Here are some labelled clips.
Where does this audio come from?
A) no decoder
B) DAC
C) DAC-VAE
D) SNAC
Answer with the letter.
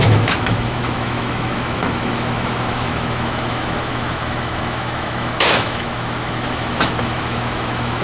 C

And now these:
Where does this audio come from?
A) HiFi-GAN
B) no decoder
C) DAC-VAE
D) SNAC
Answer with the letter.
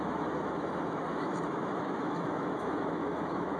C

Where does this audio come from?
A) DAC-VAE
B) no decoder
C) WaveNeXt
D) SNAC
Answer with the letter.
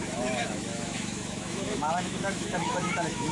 A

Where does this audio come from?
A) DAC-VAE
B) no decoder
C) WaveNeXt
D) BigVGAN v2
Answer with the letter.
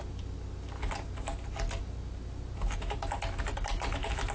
B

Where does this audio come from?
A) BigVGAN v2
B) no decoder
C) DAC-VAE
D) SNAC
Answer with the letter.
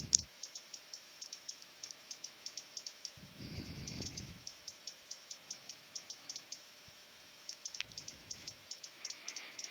C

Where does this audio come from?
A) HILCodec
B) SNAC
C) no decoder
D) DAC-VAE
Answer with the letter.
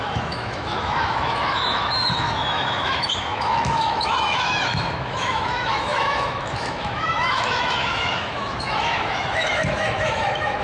D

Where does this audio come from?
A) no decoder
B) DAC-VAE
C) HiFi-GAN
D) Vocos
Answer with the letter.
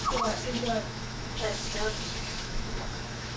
B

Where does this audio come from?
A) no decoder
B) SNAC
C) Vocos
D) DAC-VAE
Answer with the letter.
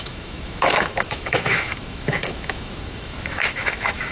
D